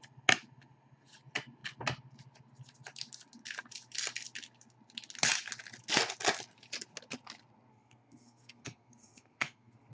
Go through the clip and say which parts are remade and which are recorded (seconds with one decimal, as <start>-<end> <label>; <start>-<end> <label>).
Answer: 0.0-7.7 recorded; 7.7-9.9 remade